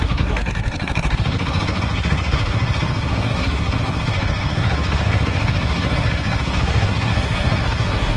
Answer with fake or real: fake